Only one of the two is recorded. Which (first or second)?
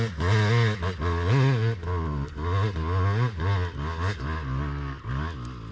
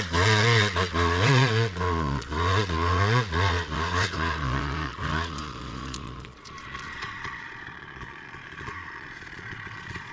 first